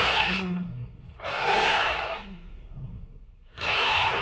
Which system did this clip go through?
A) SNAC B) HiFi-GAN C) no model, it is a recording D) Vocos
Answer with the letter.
A